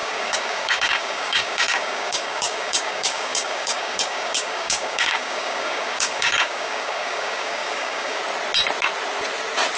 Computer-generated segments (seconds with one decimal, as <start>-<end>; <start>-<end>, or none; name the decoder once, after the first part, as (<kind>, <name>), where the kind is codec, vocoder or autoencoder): 0.0-8.2 (codec, DAC)